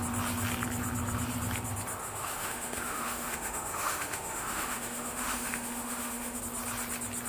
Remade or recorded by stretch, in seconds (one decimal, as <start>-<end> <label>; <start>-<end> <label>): 0.0-2.0 recorded; 2.0-6.4 remade; 6.4-7.3 recorded